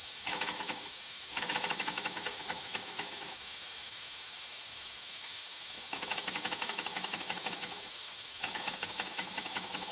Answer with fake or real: fake